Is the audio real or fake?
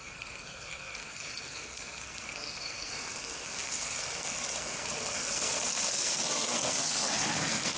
fake